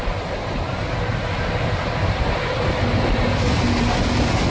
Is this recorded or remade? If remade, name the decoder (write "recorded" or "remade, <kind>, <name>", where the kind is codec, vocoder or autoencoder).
recorded